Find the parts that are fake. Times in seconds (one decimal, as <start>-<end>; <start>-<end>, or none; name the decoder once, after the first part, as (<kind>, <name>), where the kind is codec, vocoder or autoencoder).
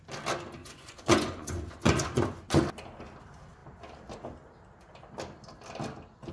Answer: 0.6-2.4 (vocoder, Vocos)